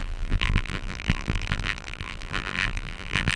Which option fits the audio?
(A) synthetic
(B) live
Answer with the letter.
A